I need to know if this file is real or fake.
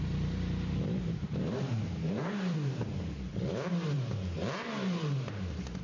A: fake